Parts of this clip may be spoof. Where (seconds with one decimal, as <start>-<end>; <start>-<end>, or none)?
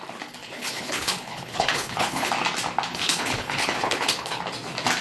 0.4-2.3; 2.9-4.4